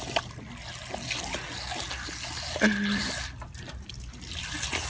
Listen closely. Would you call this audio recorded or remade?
recorded